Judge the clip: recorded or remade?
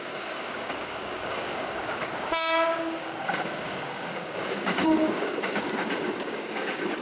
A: remade